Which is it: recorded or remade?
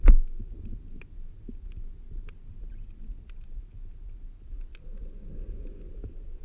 recorded